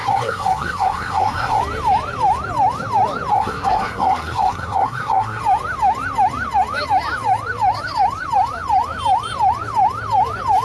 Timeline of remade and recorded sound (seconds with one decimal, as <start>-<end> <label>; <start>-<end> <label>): 0.0-1.6 remade; 1.6-3.3 recorded; 3.3-5.4 remade; 5.4-10.6 recorded